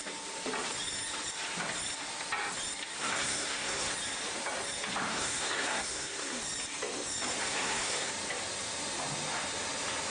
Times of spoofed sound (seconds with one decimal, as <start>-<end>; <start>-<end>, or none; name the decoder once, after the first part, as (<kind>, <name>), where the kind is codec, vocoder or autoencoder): 2.9-3.9 (codec, SNAC); 5.1-6.4; 7.4-8.1